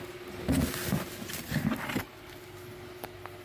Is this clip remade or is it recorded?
recorded